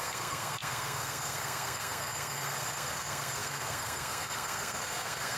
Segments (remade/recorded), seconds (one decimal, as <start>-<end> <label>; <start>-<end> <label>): 0.0-5.4 remade